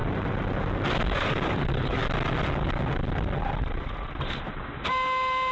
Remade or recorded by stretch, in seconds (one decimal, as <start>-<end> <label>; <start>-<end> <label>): 0.0-0.9 recorded; 0.9-2.0 remade; 2.0-3.4 recorded; 3.4-5.5 remade